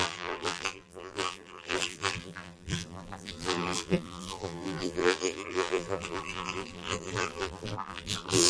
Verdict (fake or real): fake